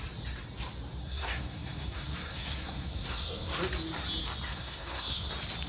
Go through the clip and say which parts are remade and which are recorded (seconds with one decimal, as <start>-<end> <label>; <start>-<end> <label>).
0.0-1.0 recorded; 1.0-3.6 remade; 3.6-4.5 recorded; 4.5-5.3 remade; 5.3-5.7 recorded